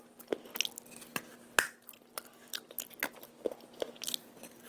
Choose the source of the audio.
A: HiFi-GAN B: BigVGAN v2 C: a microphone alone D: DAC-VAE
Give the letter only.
C